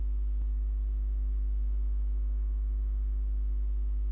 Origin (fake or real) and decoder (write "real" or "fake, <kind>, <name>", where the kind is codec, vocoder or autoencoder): real